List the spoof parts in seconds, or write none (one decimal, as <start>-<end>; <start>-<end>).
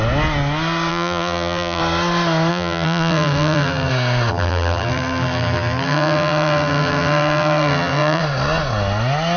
0.9-1.8; 2.5-3.9; 4.3-8.2